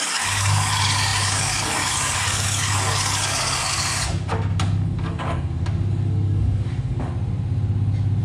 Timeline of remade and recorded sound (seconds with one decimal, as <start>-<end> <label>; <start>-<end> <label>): 0.0-7.1 remade; 7.1-8.2 recorded